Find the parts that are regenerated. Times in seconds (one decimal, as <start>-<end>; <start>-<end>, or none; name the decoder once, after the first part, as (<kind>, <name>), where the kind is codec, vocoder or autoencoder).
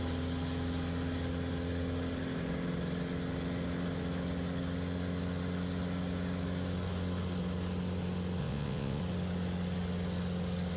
8.4-9.0 (vocoder, WaveNeXt)